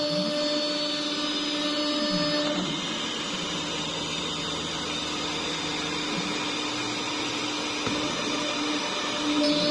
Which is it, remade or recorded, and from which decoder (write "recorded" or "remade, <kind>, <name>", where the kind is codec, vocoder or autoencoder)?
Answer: recorded